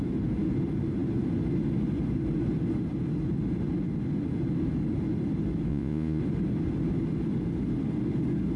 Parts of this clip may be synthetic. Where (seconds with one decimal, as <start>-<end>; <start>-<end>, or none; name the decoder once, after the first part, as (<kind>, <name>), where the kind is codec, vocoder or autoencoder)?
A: 5.7-6.2 (vocoder, Vocos)